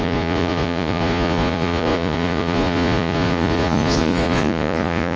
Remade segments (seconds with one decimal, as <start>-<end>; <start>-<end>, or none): 0.0-5.2